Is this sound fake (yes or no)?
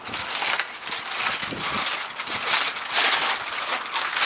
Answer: no